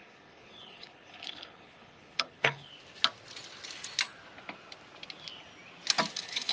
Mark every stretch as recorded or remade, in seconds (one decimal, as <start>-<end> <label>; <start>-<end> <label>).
0.0-2.7 remade; 2.7-6.1 recorded; 6.1-6.5 remade